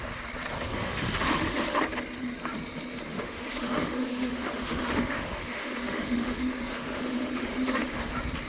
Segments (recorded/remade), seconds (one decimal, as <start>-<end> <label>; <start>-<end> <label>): 0.0-0.7 recorded; 0.7-1.8 remade; 1.8-3.1 recorded; 3.1-8.1 remade; 8.1-8.5 recorded